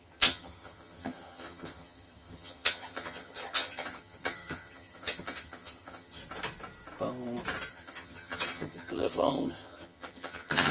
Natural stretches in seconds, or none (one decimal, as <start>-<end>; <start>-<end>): 6.2-7.7